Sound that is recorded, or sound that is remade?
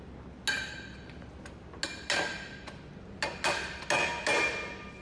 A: recorded